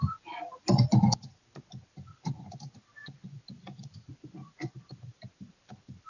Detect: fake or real real